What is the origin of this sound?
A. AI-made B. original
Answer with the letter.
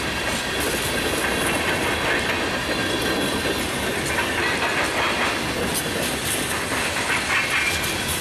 B